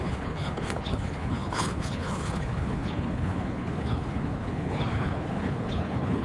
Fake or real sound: fake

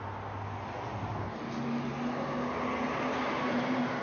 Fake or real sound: real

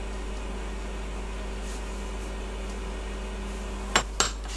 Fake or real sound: real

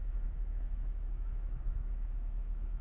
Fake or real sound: fake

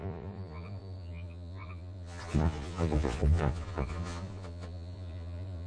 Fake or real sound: fake